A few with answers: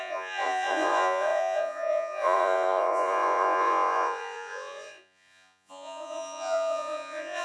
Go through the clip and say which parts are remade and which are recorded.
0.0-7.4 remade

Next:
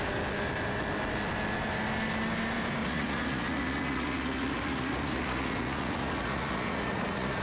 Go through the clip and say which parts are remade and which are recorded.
0.0-2.8 recorded; 2.8-7.4 remade

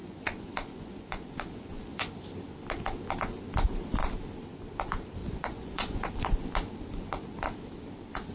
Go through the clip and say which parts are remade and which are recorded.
0.0-2.1 remade; 2.1-5.2 recorded; 5.2-6.1 remade; 6.1-8.3 recorded